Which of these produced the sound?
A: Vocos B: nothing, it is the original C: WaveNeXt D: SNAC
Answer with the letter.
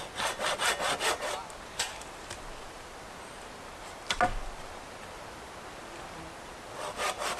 B